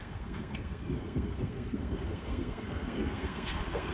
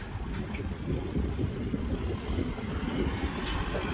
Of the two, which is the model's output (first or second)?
first